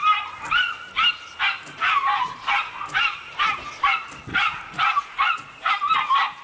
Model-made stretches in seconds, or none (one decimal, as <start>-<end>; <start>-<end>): 2.0-2.7; 4.3-5.7